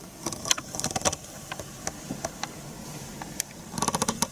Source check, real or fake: real